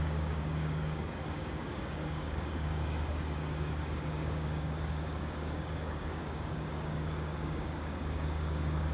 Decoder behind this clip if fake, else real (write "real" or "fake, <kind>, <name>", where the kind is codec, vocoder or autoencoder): fake, codec, DAC